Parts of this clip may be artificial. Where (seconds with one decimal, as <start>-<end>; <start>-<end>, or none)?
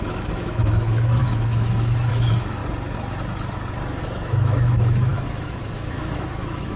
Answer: 0.0-2.6; 4.0-6.8